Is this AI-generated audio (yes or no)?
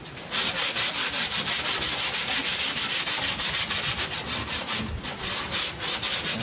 no